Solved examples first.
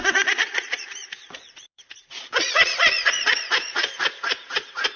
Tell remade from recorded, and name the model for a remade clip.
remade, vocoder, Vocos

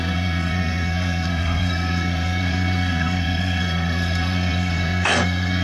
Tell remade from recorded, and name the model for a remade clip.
remade, codec, SNAC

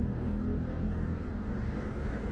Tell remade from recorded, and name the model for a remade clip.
remade, codec, DAC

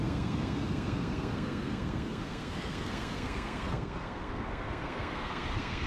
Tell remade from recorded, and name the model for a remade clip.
remade, codec, SNAC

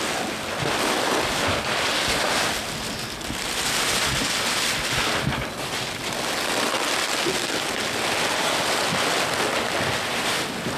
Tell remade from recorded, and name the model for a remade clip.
recorded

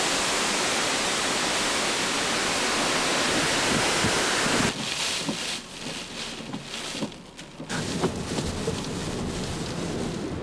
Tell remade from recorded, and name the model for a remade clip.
recorded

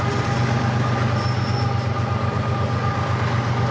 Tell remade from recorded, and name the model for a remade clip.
recorded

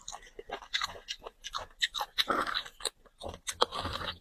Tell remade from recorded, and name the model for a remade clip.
recorded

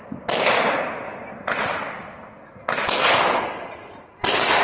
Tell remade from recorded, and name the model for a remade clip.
recorded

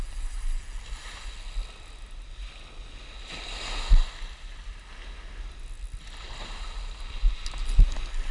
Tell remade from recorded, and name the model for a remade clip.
recorded